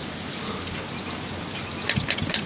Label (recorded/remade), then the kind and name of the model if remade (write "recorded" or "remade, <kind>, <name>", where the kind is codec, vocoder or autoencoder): recorded